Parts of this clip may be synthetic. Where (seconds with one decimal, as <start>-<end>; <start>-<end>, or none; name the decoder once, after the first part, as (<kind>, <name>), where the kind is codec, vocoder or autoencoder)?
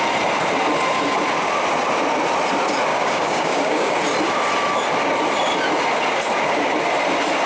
2.9-3.9 (codec, DAC)